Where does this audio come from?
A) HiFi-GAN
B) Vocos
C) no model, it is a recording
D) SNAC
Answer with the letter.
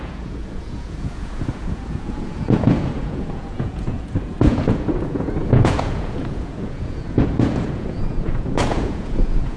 B